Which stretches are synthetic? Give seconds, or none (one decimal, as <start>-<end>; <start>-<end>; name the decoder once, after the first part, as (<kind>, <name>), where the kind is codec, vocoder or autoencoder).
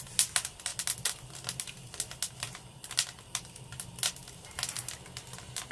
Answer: none